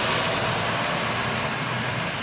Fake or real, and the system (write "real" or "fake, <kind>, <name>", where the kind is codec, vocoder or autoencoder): real